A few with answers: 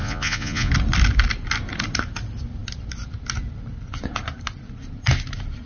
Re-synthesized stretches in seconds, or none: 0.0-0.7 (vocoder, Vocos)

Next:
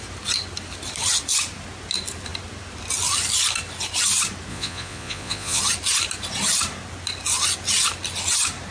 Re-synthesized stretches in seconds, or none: 4.5-5.6 (vocoder, Vocos)

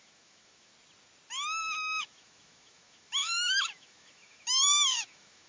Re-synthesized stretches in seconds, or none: 0.0-0.7 (autoencoder, DAC-VAE); 1.6-5.5

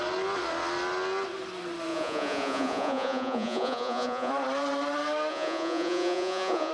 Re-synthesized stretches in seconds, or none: 1.9-4.3 (vocoder, Vocos); 5.3-6.7

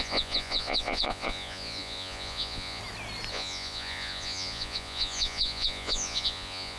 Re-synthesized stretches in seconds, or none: 0.0-2.8 (vocoder, Vocos); 3.3-6.8

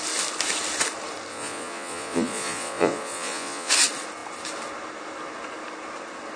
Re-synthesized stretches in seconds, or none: 1.3-3.7 (vocoder, Vocos)